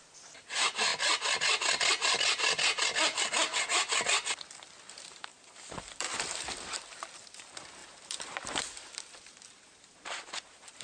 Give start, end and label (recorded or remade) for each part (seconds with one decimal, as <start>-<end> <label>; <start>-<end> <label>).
0.0-0.9 remade; 0.9-4.8 recorded; 4.8-10.8 remade